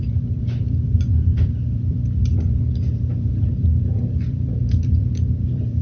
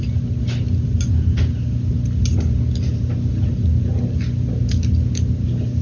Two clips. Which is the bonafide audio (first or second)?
second